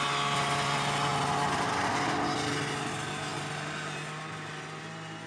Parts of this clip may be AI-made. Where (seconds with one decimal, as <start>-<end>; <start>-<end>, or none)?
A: none